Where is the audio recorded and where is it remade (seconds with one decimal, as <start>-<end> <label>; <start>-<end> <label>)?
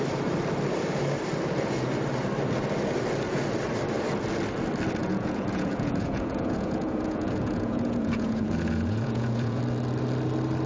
0.0-5.0 recorded; 5.0-9.6 remade; 9.6-10.7 recorded